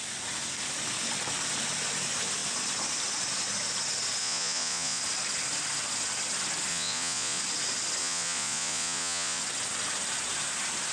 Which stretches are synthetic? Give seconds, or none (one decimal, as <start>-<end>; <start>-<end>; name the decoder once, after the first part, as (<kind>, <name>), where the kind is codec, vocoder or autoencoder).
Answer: 4.2-5.0 (vocoder, Vocos); 6.7-7.4; 8.0-9.4